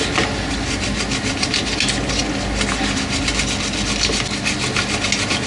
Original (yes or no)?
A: yes